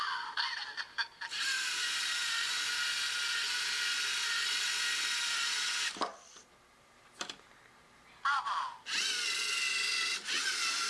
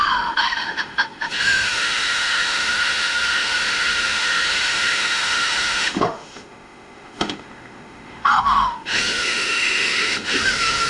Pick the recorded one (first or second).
first